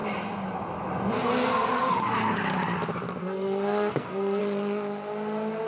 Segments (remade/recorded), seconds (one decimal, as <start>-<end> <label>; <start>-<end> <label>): 0.0-3.2 recorded; 3.2-4.4 remade; 4.4-5.7 recorded